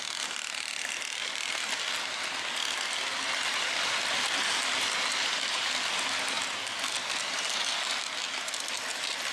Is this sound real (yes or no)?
yes